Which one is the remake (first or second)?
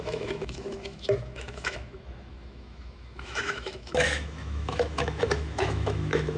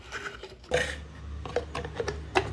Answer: first